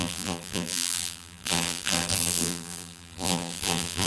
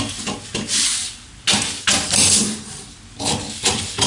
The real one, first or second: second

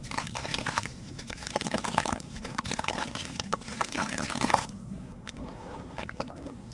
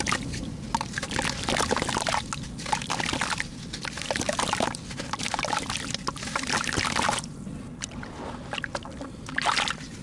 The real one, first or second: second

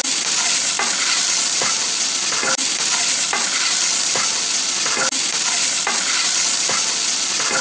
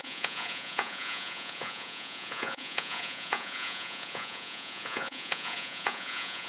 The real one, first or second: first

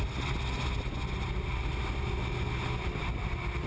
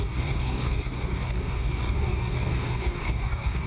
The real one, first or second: first